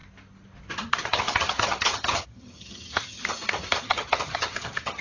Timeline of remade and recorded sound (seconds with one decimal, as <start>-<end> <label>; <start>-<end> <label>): 0.0-1.0 recorded; 1.0-3.2 remade; 3.2-3.8 recorded; 3.8-5.0 remade